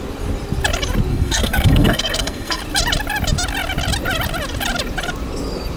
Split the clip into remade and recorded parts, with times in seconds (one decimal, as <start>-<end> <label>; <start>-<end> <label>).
0.0-1.1 recorded; 1.1-2.6 remade; 2.6-5.8 recorded